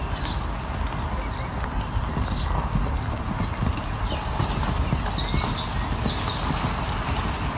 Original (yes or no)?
yes